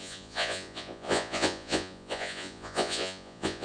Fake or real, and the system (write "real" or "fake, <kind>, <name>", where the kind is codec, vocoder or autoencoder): fake, vocoder, Vocos